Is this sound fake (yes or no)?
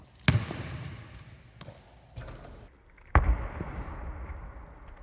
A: no